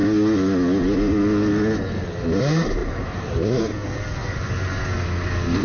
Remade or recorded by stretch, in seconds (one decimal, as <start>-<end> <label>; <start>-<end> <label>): 0.0-2.8 recorded; 2.8-3.6 remade; 3.6-5.6 recorded